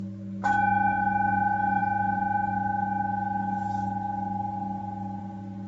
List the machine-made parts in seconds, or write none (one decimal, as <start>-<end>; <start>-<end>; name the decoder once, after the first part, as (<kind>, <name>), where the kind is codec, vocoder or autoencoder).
none